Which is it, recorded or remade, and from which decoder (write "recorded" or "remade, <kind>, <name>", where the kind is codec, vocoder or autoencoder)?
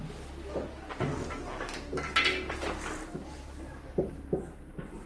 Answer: recorded